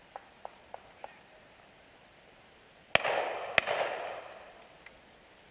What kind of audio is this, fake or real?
real